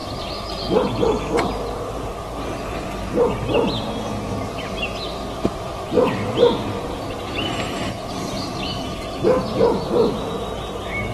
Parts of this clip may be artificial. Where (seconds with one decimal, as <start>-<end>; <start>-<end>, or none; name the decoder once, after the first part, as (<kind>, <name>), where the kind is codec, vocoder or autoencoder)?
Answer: none

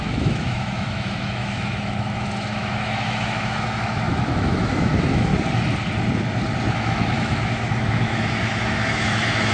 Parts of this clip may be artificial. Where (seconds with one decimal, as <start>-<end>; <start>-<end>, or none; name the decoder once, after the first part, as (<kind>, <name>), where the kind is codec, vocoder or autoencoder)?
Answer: 0.0-5.3 (autoencoder, DAC-VAE); 6.7-9.5

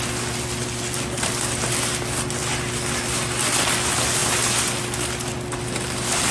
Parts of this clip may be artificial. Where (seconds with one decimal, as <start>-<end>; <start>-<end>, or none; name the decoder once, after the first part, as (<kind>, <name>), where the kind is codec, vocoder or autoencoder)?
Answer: none